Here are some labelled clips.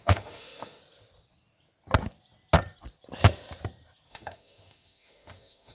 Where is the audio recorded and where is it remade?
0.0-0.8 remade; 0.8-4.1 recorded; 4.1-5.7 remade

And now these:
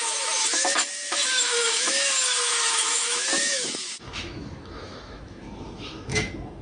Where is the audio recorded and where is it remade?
0.0-6.6 remade